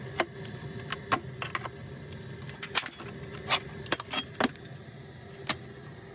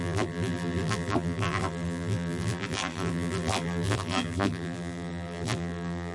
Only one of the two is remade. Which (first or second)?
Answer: second